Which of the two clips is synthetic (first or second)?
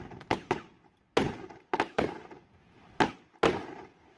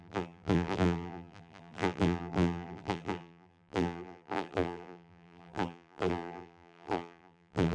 second